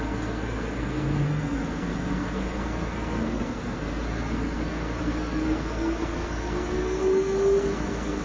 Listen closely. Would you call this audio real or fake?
fake